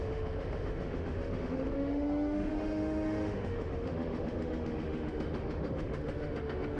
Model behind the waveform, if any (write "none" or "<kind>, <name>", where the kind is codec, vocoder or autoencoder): autoencoder, DAC-VAE